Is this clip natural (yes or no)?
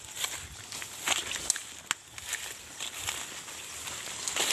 yes